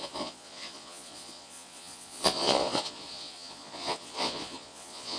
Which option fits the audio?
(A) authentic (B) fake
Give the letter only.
B